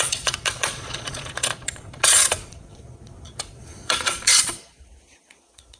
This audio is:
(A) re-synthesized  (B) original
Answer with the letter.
A